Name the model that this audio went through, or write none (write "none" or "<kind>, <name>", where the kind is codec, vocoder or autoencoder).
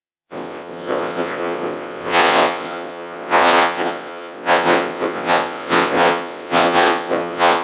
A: vocoder, WaveNeXt